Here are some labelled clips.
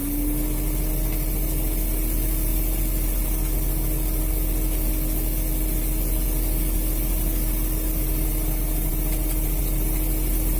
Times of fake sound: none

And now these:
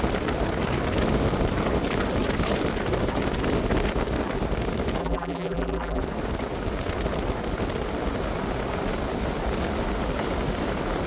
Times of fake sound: 5.0-6.0 (vocoder, BigVGAN v2)

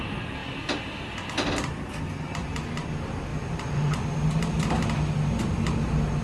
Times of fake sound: none

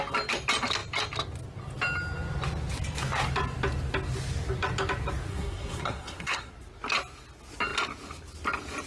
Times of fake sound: 5.3-6.5 (codec, SNAC)

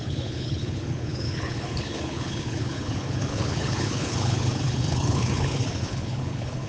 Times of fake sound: 0.0-6.7 (codec, HILCodec)

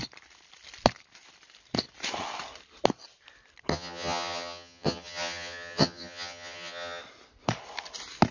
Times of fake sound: 3.7-7.0 (vocoder, HiFi-GAN)

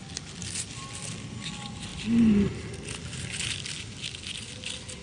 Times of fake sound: none

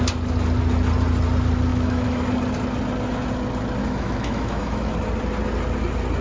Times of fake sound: 1.7-2.2 (autoencoder, DAC-VAE); 3.8-4.9